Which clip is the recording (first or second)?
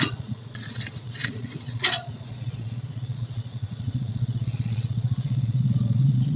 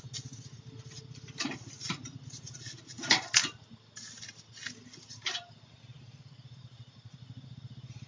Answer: second